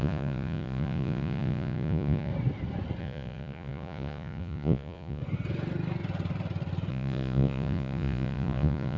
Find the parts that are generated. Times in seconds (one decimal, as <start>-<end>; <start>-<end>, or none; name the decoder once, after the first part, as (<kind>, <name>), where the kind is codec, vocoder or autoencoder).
0.0-2.3 (vocoder, Vocos); 3.0-5.2; 6.9-9.0